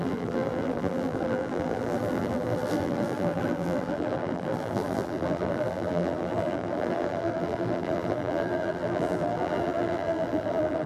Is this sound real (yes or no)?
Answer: no